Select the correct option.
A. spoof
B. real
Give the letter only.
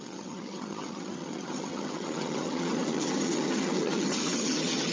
A